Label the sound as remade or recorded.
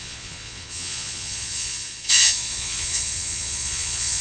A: remade